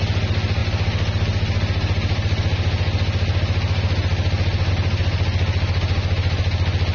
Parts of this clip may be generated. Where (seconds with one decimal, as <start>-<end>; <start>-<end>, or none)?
none